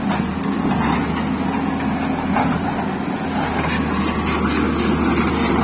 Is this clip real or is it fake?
real